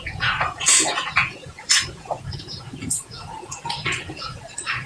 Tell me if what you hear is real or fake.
fake